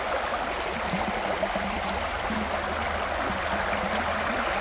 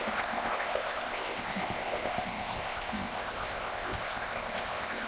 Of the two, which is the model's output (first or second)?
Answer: second